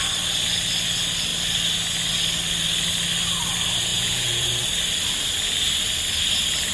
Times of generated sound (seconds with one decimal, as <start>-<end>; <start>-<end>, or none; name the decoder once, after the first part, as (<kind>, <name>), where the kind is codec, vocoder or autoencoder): 3.9-4.5 (vocoder, Vocos)